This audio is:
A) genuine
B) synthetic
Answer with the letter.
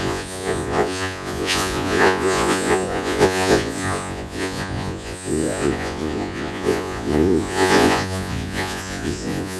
B